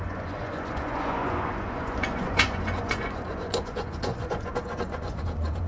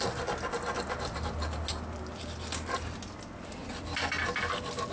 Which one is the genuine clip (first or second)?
second